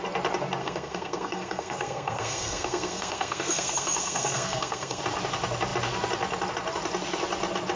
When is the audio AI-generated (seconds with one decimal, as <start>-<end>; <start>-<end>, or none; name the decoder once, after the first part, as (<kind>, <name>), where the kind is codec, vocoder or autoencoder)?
0.6-5.0 (codec, SNAC)